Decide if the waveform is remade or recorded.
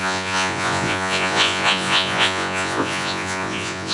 remade